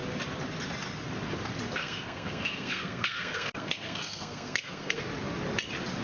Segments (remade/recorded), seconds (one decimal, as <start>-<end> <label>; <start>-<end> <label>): 0.0-1.8 recorded; 1.8-5.0 remade; 5.0-6.0 recorded